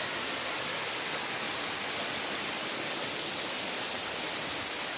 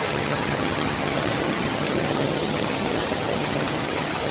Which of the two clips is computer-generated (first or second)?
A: second